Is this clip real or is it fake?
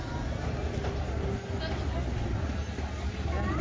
real